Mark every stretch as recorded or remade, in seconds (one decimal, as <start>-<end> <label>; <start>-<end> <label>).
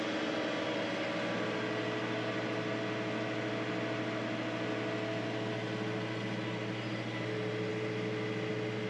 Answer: 0.0-8.9 recorded